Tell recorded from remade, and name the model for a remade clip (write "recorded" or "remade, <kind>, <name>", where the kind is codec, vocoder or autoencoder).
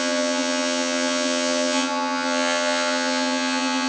remade, vocoder, HiFi-GAN